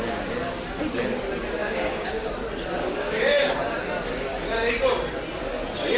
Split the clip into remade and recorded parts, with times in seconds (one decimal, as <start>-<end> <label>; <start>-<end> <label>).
0.0-1.6 recorded; 1.6-2.3 remade; 2.3-2.8 recorded; 2.8-3.5 remade; 3.5-6.0 recorded